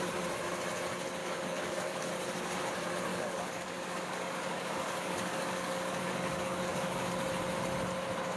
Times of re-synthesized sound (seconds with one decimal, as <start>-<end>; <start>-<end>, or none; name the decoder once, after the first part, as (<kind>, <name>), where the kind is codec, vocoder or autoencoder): 1.2-2.1 (codec, DAC); 3.1-7.1